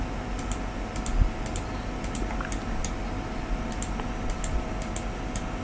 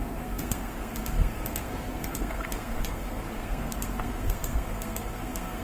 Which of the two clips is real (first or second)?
first